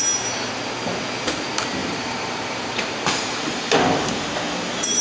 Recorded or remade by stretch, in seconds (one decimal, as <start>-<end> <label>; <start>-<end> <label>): 0.0-1.8 recorded; 1.8-3.8 remade; 3.8-5.0 recorded